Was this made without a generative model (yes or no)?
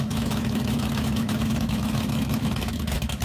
no